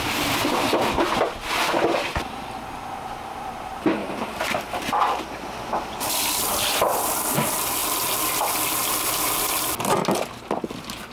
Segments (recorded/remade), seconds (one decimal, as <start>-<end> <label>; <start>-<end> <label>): 0.0-4.0 recorded; 4.0-5.0 remade; 5.0-7.8 recorded; 7.8-9.6 remade; 9.6-11.1 recorded